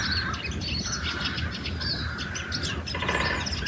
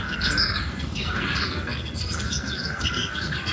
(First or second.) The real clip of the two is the first